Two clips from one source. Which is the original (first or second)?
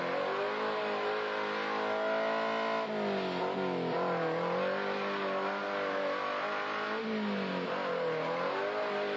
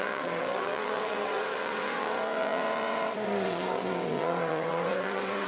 first